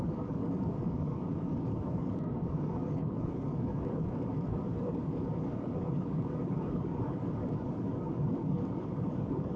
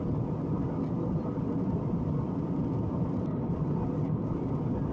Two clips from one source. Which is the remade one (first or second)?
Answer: first